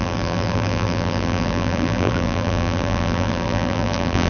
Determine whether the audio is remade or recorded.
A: remade